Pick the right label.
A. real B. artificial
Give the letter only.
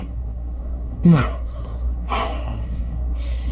B